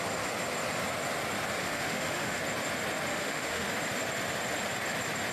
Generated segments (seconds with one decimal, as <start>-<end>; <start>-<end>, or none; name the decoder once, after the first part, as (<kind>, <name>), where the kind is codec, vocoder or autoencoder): 1.6-2.4 (autoencoder, DAC-VAE); 3.1-3.7